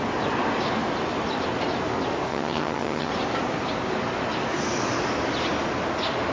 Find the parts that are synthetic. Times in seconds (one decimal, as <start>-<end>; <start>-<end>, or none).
2.3-3.1

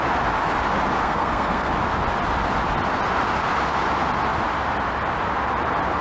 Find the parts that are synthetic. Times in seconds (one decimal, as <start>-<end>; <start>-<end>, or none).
1.0-1.7

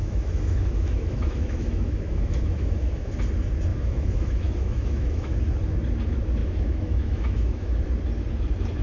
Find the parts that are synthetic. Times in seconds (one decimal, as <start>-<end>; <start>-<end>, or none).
0.0-3.1; 3.7-5.4; 6.4-7.8

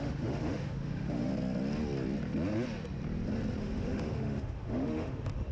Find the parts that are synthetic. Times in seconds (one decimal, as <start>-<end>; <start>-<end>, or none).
0.0-1.3; 3.6-5.5